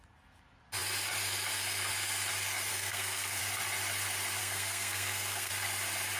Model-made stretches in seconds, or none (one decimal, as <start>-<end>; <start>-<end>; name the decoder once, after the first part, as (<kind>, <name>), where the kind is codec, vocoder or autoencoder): 2.7-3.4 (codec, SNAC); 4.4-5.5